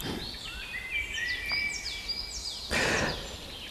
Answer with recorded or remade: recorded